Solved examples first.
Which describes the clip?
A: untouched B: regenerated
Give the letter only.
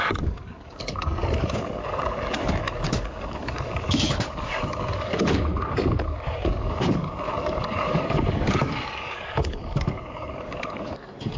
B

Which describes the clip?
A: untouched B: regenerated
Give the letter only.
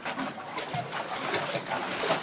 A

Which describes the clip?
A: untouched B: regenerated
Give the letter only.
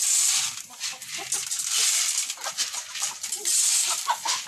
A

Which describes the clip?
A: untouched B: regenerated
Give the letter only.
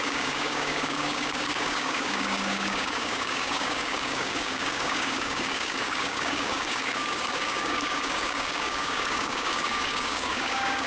B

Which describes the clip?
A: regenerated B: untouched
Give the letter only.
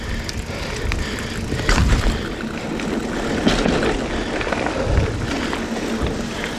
B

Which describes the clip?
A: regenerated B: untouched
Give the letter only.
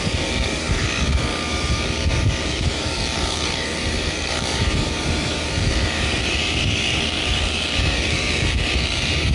A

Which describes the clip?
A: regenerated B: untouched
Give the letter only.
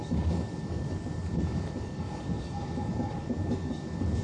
A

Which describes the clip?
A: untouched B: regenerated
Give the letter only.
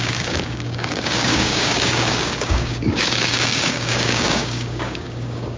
B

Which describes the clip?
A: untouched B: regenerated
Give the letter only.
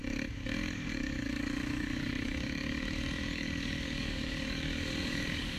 B